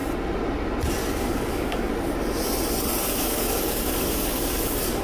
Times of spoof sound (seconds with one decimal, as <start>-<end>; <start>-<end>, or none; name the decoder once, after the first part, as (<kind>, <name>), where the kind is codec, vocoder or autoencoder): 1.2-1.9 (codec, DAC); 3.1-5.0